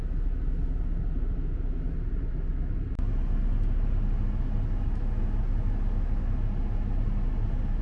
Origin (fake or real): real